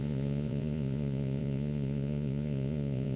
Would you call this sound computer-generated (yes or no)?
yes